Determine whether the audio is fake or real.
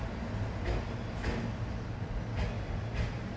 real